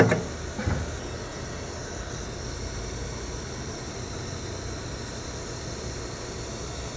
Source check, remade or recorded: recorded